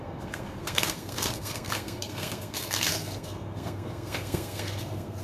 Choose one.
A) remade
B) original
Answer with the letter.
A